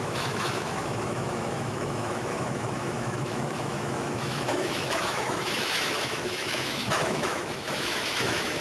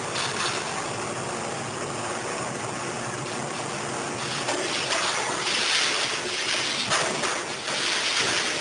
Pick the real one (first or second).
second